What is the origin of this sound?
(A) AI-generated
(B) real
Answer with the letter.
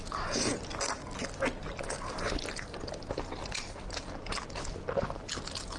B